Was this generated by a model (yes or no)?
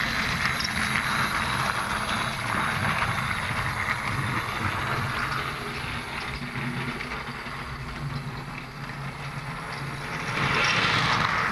no